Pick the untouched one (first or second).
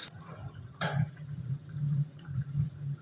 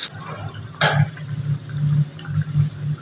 second